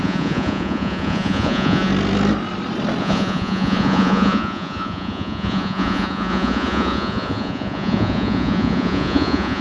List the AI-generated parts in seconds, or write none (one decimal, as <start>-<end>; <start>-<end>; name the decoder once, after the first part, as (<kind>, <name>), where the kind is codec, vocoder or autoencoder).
0.0-1.9 (vocoder, Vocos); 3.0-9.6